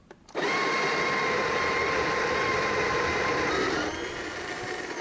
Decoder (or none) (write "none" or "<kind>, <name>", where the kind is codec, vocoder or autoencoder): vocoder, BigVGAN v2